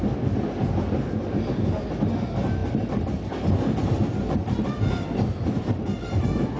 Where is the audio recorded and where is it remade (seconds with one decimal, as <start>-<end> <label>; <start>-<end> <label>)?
0.0-6.6 recorded